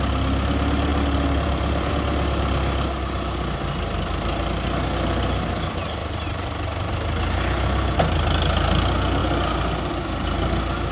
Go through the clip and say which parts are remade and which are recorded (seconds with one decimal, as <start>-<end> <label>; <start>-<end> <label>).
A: 0.0-0.9 recorded; 0.9-1.9 remade; 1.9-6.0 recorded; 6.0-6.9 remade; 6.9-10.9 recorded